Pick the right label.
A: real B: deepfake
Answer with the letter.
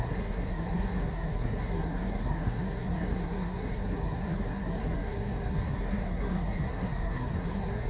B